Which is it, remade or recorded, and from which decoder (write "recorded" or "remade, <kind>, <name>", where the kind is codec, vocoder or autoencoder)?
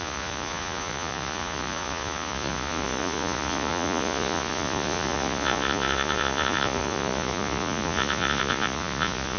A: remade, vocoder, Vocos